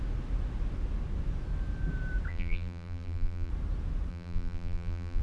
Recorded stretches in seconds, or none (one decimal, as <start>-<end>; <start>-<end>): 0.0-2.3; 3.5-4.1